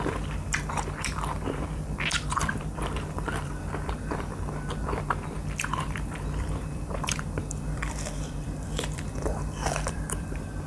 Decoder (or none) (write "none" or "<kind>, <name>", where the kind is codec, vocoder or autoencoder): vocoder, BigVGAN v2